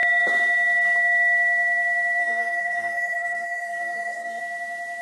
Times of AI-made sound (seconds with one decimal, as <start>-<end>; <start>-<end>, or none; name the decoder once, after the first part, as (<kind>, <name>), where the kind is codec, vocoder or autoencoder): 2.2-4.4 (codec, SNAC)